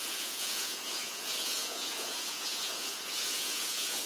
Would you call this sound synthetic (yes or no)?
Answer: yes